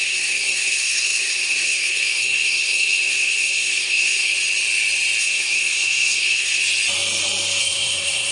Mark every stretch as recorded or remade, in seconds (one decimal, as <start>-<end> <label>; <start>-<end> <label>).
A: 0.0-4.3 remade; 4.3-5.2 recorded; 5.2-6.6 remade; 6.6-7.6 recorded; 7.6-8.3 remade